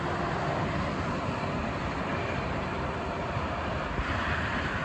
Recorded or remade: remade